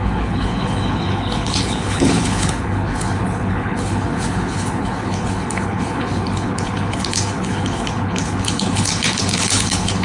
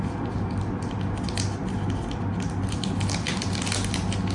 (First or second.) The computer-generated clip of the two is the first